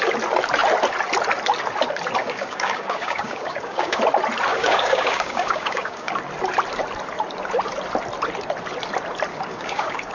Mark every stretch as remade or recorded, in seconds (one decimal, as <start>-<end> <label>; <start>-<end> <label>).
0.0-2.2 recorded; 2.2-4.0 remade; 4.0-4.5 recorded; 4.5-6.1 remade; 6.1-9.3 recorded; 9.3-10.1 remade